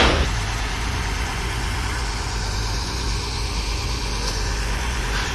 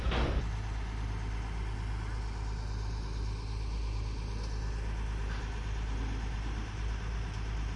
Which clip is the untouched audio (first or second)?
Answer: second